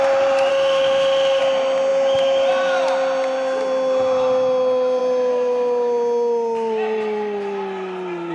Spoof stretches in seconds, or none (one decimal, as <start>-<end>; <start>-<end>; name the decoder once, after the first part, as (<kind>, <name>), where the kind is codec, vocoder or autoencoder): 0.5-1.4 (autoencoder, DAC-VAE)